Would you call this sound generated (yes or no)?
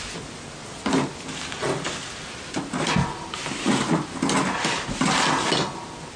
no